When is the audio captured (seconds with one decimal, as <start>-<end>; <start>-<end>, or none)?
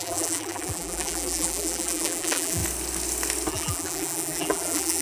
2.6-3.5